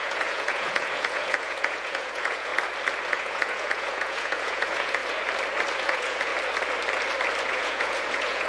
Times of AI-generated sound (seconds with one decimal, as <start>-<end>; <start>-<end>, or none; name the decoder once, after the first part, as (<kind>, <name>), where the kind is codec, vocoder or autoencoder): 0.0-2.5 (vocoder, Vocos); 3.1-5.0; 5.8-6.3; 7.5-8.5